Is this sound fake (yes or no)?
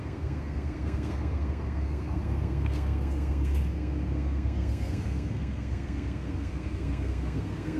yes